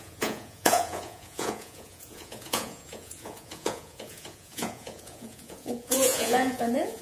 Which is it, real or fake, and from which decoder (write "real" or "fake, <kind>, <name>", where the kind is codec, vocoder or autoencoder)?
fake, vocoder, Vocos